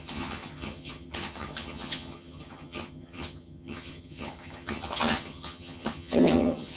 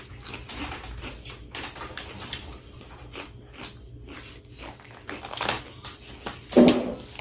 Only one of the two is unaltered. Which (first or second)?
second